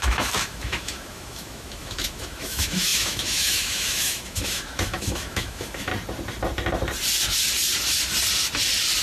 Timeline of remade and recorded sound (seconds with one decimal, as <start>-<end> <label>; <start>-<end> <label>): 0.0-5.9 remade; 5.9-9.0 recorded